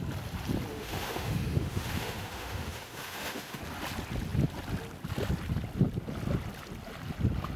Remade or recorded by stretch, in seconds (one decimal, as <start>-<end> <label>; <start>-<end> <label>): 0.0-0.7 recorded; 0.7-3.6 remade; 3.6-7.6 recorded